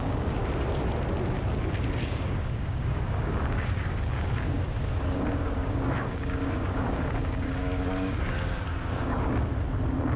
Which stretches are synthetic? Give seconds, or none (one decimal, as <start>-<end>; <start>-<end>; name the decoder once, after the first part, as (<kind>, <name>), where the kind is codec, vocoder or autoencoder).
0.0-0.4 (codec, DAC); 2.1-9.5